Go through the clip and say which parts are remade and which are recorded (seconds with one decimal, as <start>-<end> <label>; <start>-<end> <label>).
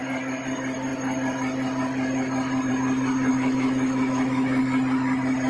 0.0-3.3 recorded; 3.3-4.6 remade; 4.6-5.5 recorded